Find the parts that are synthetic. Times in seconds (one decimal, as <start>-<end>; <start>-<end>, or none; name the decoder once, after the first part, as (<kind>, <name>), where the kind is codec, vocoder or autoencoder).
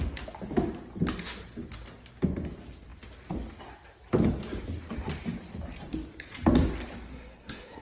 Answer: 7.1-7.8 (codec, SNAC)